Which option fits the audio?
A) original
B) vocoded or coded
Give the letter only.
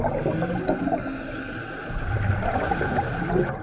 A